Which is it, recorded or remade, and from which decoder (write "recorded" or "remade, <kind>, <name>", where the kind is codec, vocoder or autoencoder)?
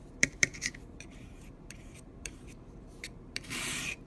remade, vocoder, BigVGAN v2